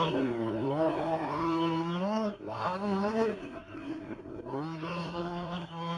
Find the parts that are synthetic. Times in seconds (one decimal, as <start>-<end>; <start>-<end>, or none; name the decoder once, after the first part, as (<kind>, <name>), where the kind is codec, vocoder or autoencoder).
0.0-6.0 (codec, SNAC)